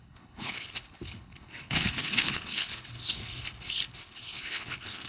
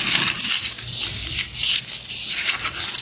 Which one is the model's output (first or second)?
first